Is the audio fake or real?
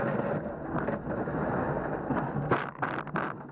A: real